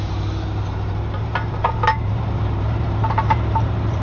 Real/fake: fake